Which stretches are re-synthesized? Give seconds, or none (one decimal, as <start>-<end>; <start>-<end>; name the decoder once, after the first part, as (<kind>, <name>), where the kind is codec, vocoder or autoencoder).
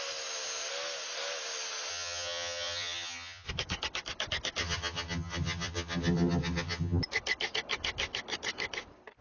1.9-3.5 (vocoder, HiFi-GAN); 4.6-7.0